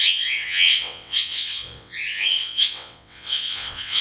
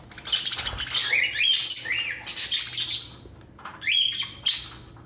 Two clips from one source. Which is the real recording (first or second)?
second